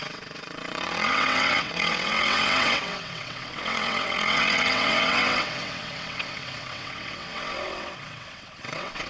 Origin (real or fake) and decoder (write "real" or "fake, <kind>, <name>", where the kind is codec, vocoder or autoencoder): fake, vocoder, WaveNeXt